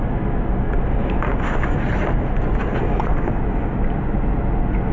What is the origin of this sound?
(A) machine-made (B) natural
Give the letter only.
B